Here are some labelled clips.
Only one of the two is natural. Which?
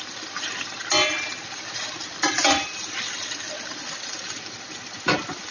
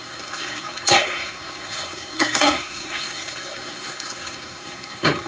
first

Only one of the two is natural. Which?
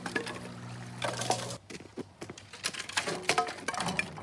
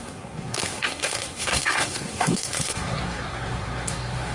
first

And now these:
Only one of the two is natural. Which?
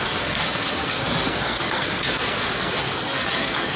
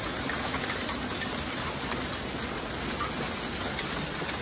second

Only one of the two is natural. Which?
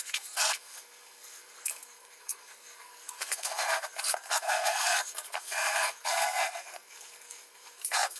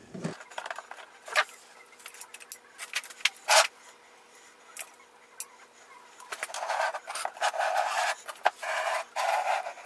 second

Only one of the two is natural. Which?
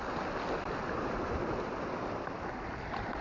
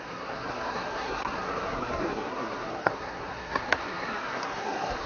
first